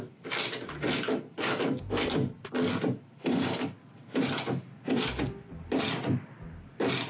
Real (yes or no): yes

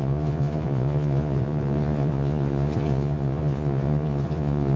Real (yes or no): no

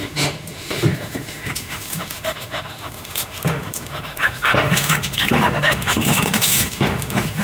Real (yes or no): no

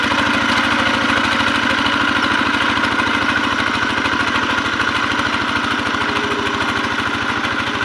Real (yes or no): yes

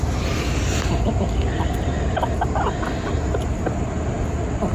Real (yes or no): yes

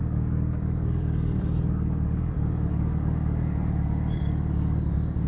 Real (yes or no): no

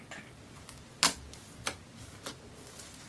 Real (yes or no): yes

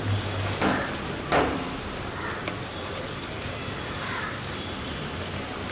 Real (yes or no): yes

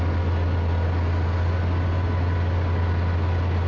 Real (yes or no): yes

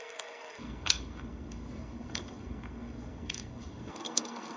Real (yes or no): no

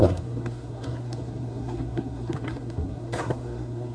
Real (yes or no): no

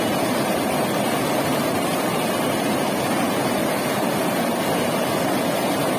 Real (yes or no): yes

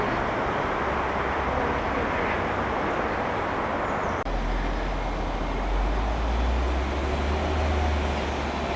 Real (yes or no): yes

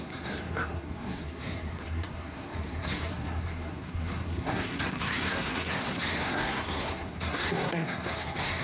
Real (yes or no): no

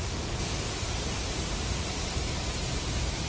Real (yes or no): no